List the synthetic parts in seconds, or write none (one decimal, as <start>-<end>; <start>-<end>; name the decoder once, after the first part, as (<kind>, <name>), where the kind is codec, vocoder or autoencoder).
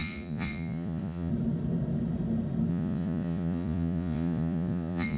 0.0-1.3 (vocoder, Vocos); 2.7-5.2